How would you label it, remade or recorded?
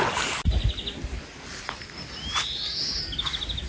recorded